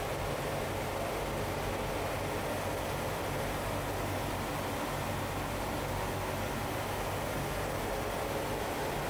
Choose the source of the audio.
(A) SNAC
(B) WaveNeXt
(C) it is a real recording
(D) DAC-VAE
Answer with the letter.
C